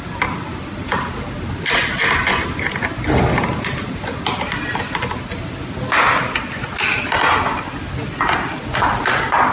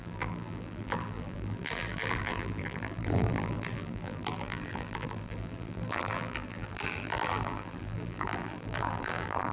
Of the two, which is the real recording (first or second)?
first